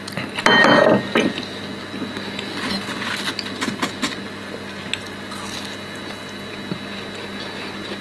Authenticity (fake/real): real